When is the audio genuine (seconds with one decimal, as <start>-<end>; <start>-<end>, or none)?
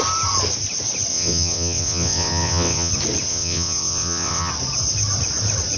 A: 0.0-1.1; 2.9-3.3; 4.5-5.8